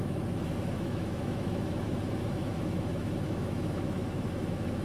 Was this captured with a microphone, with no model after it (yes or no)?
no